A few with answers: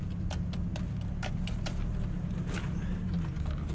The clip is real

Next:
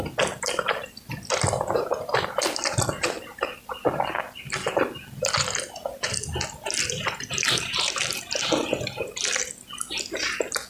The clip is real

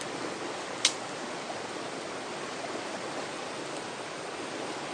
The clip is real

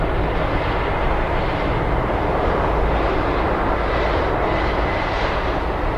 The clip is real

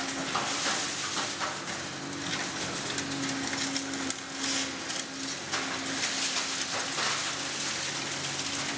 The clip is real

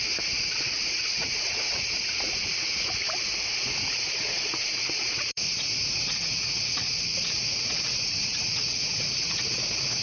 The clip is fake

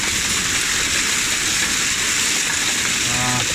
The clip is real